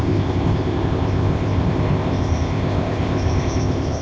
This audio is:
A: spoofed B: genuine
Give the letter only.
A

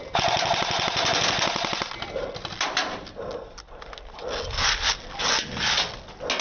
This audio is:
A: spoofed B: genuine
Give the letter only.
B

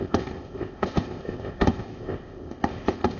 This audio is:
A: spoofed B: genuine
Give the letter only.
A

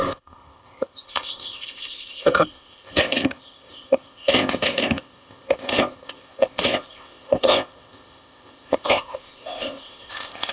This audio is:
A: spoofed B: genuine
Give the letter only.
A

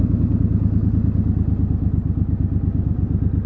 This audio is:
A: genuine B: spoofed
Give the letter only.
A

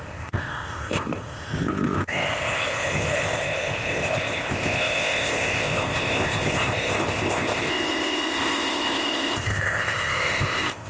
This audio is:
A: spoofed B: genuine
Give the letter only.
A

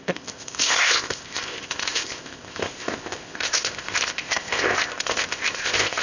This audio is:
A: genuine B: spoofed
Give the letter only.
B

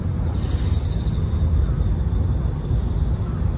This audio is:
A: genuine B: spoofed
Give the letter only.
A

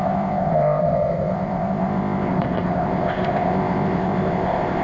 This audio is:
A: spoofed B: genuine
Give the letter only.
A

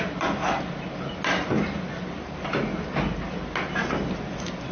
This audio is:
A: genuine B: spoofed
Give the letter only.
A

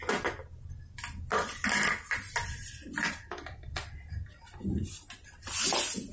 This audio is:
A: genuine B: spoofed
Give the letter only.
A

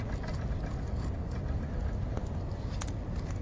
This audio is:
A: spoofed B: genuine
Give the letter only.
B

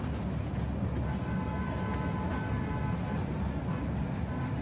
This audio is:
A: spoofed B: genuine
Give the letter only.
B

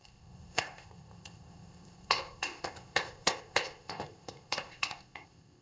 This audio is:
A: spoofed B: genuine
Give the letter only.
A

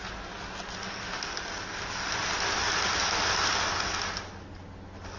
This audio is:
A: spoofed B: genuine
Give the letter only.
B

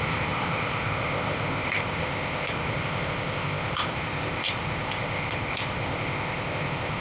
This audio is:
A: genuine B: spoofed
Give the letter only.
B